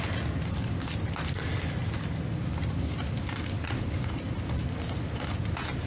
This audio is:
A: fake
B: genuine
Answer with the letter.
B